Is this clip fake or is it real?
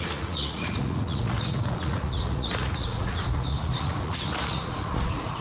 fake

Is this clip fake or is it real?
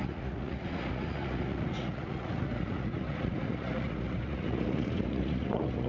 fake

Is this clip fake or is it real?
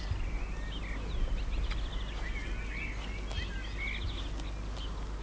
real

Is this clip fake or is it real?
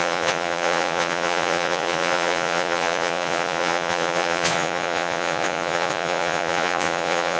fake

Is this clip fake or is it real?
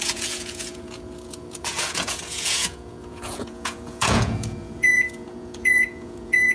fake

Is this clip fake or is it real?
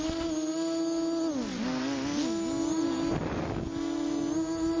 real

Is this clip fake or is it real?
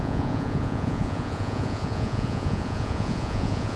fake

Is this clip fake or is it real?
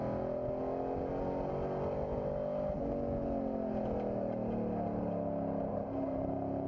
real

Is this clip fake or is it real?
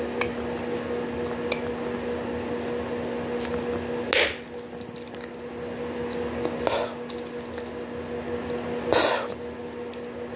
real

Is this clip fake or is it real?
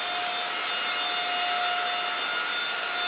real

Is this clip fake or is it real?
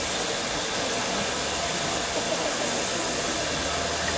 real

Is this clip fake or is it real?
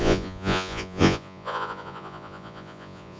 fake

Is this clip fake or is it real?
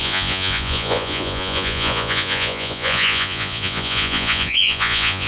fake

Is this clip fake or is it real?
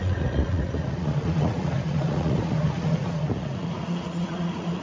fake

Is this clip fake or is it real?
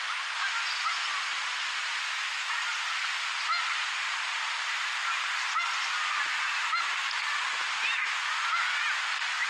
real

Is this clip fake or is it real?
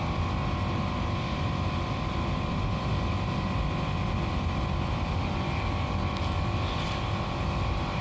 real